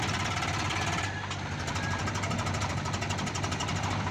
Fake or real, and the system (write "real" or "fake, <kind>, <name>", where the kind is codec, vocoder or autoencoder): real